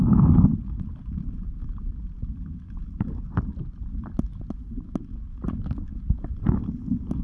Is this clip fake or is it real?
real